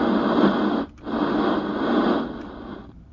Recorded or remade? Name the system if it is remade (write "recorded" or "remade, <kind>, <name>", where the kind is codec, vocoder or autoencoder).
recorded